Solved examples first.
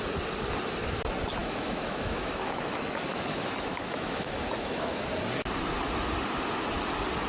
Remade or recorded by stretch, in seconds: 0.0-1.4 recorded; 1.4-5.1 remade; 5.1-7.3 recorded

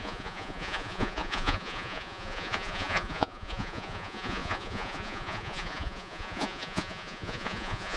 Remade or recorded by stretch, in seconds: 0.0-8.0 remade

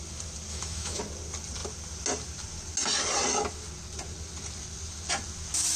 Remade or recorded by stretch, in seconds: 0.0-0.5 recorded; 0.5-1.0 remade; 1.0-5.8 recorded